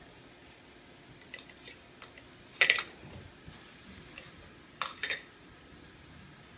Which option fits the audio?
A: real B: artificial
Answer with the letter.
A